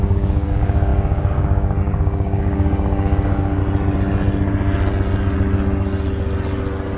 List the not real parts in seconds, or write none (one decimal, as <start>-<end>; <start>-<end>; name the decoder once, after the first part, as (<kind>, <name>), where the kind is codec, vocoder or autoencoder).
0.0-3.6 (codec, DAC)